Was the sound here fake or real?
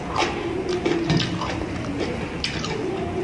real